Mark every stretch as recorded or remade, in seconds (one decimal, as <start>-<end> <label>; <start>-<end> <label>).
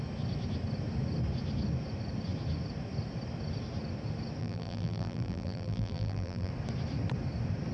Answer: 0.0-4.4 recorded; 4.4-6.5 remade; 6.5-7.7 recorded